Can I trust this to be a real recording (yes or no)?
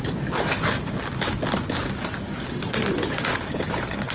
yes